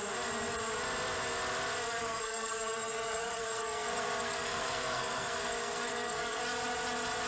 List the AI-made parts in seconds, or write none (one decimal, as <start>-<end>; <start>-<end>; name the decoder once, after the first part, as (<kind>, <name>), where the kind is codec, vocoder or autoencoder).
2.0-6.4 (codec, SNAC)